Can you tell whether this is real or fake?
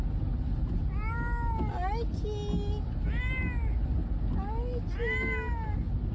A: real